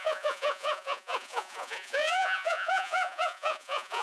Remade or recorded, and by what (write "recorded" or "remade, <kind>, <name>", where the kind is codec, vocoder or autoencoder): remade, vocoder, Vocos